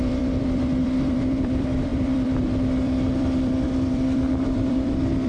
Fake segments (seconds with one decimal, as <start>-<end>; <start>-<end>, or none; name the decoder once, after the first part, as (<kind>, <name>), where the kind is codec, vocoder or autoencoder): 0.0-5.3 (vocoder, BigVGAN v2)